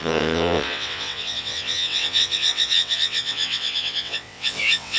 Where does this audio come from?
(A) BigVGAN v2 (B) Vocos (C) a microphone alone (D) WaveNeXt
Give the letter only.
D